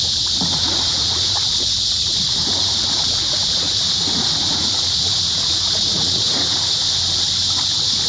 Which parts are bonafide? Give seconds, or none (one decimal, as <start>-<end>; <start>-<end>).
6.8-8.1